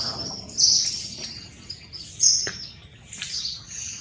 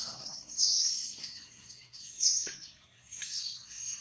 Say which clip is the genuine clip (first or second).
first